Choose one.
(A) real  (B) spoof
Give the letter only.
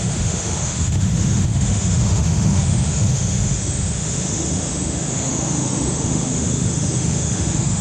B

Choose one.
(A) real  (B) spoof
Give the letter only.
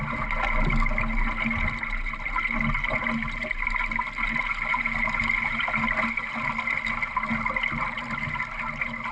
A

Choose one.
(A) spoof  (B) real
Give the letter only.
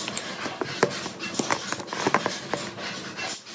B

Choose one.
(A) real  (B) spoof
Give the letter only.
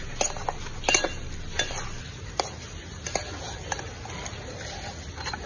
A